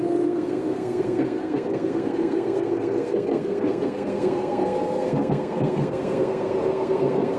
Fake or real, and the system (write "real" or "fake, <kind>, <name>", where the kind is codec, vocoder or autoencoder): fake, codec, SNAC